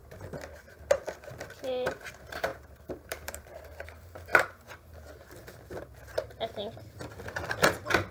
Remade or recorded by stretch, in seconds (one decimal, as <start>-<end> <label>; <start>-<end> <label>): 0.0-1.6 recorded; 1.6-4.3 remade; 4.3-8.1 recorded